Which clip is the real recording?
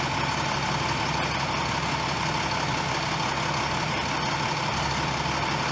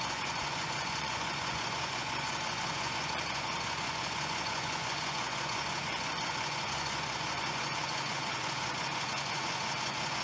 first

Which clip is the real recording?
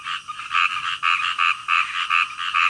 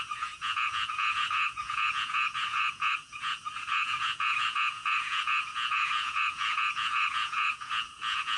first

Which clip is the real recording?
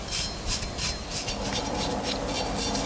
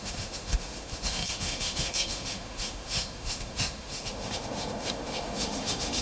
first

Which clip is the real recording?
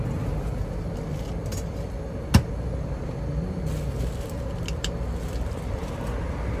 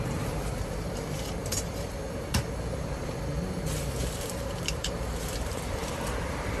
first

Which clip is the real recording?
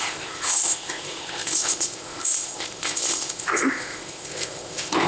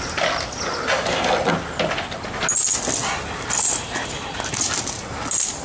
second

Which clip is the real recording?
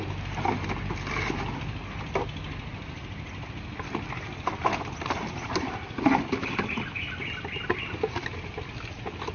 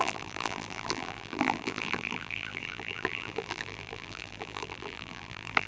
first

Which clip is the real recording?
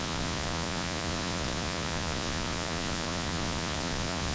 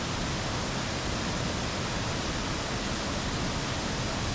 second